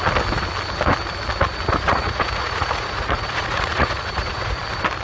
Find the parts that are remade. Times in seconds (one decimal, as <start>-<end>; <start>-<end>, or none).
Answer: 1.9-4.6